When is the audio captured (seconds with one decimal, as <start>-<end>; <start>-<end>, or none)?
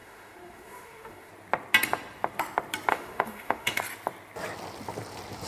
1.3-2.9; 3.8-5.5